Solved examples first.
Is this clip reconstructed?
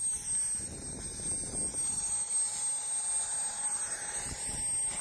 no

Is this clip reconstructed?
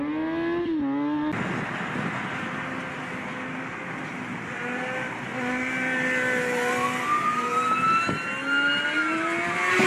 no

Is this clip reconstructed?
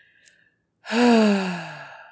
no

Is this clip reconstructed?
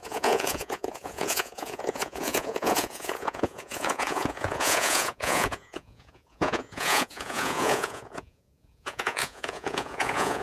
yes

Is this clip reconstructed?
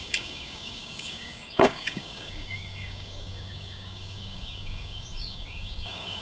yes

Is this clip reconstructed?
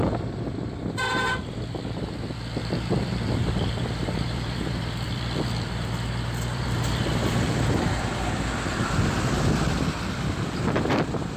yes